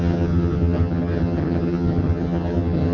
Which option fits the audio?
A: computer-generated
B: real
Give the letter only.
A